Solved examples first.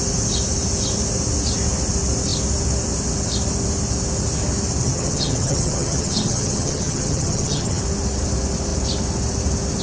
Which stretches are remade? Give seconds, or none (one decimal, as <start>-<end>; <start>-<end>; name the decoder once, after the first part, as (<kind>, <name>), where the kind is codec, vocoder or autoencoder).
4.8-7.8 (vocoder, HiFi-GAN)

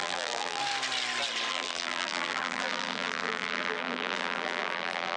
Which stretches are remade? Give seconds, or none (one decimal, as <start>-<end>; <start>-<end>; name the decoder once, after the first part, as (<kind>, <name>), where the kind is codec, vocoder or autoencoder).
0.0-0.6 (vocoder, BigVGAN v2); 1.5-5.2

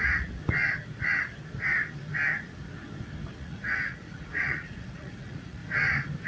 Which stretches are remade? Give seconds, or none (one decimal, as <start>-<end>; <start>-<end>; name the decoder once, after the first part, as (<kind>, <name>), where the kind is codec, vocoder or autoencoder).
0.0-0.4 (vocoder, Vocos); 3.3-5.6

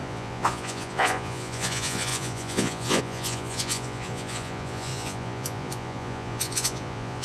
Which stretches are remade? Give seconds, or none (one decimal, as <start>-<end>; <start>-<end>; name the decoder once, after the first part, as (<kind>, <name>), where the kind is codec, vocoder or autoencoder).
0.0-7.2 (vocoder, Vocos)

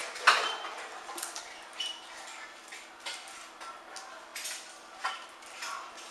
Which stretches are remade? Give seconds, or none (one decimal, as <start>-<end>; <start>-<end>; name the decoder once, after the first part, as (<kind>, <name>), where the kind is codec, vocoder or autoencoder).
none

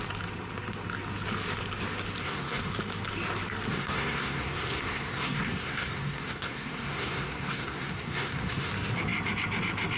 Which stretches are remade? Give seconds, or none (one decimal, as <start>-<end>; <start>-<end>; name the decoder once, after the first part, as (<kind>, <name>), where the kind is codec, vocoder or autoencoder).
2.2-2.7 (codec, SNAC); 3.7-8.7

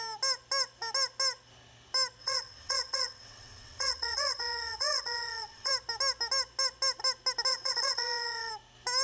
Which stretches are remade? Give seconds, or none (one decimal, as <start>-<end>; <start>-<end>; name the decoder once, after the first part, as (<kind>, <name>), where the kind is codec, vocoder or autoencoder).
2.2-5.7 (vocoder, WaveNeXt); 7.5-8.5

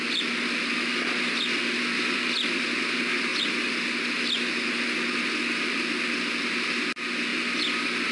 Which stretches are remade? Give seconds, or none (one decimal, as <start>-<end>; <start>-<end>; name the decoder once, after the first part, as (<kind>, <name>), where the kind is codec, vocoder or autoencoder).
none